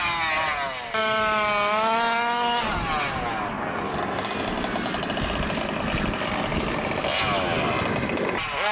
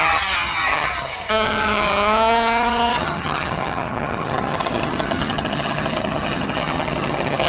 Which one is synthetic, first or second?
second